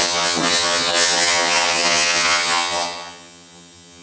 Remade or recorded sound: remade